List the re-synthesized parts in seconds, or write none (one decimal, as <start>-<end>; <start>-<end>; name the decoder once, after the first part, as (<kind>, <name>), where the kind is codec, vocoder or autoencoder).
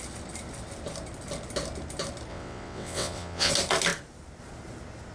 2.3-3.5 (vocoder, WaveNeXt)